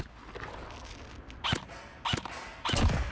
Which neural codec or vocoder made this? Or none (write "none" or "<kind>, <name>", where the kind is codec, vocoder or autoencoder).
none